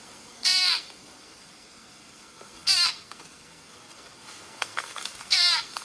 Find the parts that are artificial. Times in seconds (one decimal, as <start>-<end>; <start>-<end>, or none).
0.0-5.8